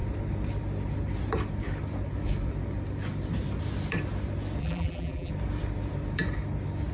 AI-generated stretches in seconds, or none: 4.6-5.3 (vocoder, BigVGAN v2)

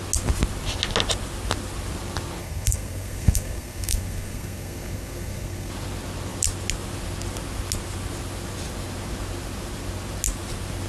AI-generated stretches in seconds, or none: 2.4-5.7 (codec, SNAC)

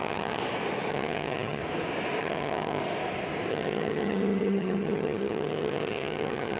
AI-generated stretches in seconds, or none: 0.0-0.4 (vocoder, HiFi-GAN); 0.9-1.6; 2.2-2.8; 3.5-6.6

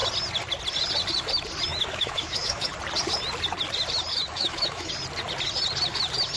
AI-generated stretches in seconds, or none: 1.7-2.7 (autoencoder, DAC-VAE); 4.1-4.9

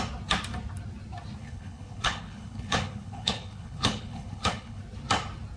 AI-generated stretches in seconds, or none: 1.4-4.8 (codec, HILCodec)

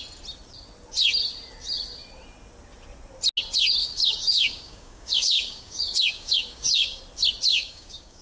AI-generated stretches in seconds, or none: 3.8-7.0 (codec, DAC); 7.5-8.2

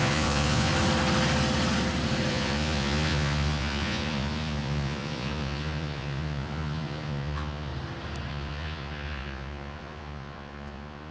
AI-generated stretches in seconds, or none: 0.0-0.7 (vocoder, Vocos); 2.3-7.7; 8.3-11.1

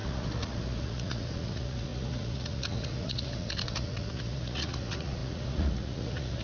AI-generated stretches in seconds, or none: 0.0-6.4 (vocoder, Vocos)